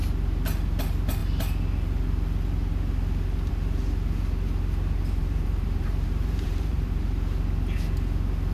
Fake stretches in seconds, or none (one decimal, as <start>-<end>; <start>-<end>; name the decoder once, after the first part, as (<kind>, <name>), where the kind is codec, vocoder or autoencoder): 5.2-7.0 (vocoder, BigVGAN v2)